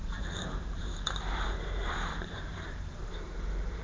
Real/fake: fake